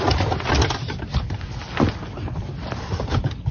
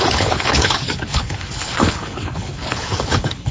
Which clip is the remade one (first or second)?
second